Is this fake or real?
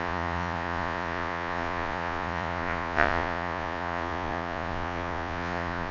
fake